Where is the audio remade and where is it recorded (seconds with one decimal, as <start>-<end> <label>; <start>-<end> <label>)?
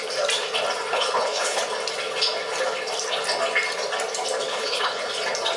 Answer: 0.0-0.9 recorded; 0.9-1.6 remade; 1.6-4.5 recorded; 4.5-5.1 remade; 5.1-5.6 recorded